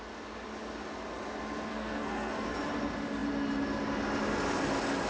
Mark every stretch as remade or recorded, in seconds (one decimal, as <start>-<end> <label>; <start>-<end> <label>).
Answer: 0.0-1.7 recorded; 1.7-2.5 remade; 2.5-5.1 recorded